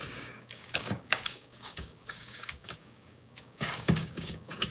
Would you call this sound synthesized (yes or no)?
yes